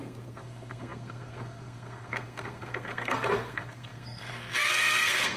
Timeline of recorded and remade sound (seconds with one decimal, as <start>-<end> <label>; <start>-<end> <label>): 0.0-5.4 remade